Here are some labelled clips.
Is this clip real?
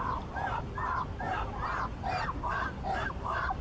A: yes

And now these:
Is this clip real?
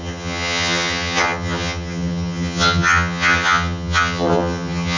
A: no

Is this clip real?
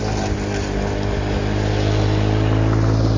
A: yes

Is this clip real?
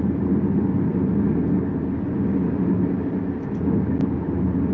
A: yes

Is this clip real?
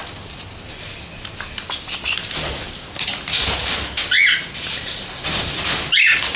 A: yes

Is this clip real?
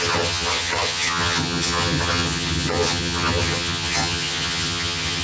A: no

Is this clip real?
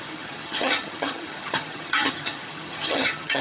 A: no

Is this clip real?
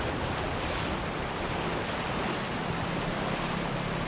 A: yes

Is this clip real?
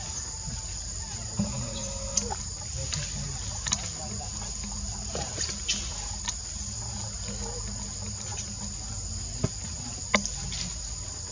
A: yes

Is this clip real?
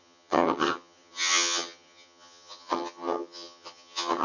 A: no